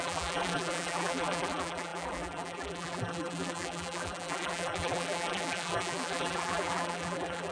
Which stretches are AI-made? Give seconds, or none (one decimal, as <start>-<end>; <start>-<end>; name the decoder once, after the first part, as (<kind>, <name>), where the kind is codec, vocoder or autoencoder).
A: 0.0-7.5 (vocoder, BigVGAN v2)